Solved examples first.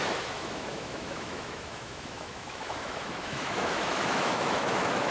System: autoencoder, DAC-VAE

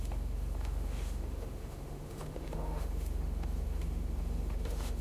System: autoencoder, DAC-VAE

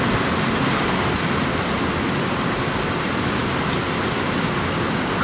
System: vocoder, BigVGAN v2